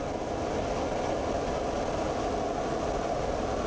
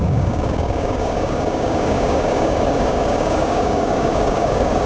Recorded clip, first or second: first